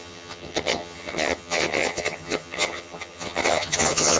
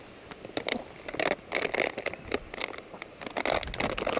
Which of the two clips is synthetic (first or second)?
first